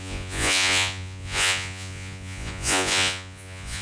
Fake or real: fake